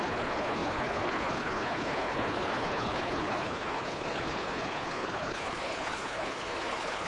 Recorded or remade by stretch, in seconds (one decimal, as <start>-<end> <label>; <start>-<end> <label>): 0.0-7.1 remade